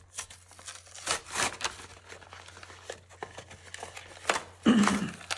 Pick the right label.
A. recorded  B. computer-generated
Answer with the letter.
A